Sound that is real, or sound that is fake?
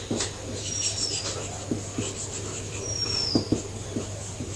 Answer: real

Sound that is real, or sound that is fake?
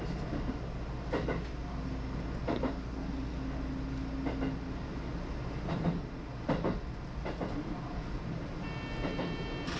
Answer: real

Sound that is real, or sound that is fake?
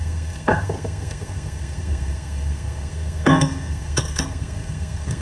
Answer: fake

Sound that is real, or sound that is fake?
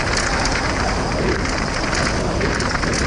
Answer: real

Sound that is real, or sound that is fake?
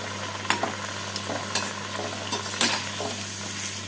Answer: real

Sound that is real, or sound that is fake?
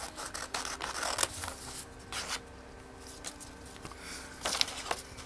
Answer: real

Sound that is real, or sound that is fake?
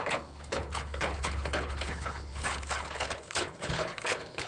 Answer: fake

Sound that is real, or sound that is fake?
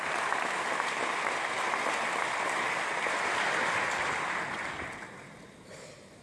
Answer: real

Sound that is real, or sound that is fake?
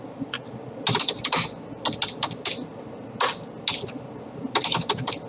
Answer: real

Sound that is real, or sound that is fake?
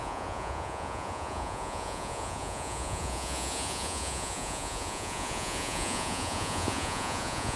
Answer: fake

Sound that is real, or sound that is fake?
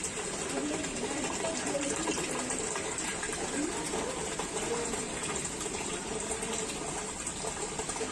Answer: real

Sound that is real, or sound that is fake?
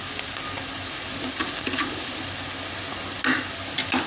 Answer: real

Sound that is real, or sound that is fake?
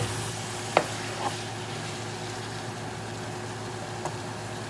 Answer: real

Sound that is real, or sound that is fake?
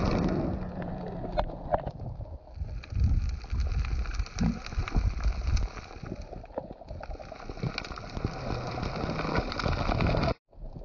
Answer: real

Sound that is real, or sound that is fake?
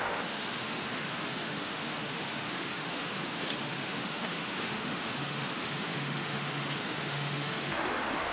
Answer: fake